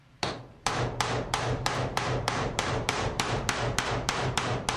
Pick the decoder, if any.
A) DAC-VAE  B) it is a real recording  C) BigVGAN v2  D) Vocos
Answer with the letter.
C